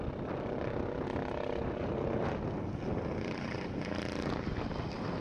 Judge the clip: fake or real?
real